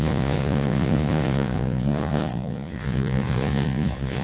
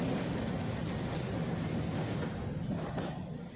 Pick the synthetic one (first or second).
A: first